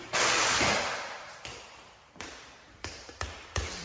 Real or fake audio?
fake